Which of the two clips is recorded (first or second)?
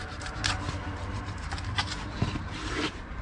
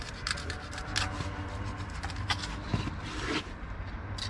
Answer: second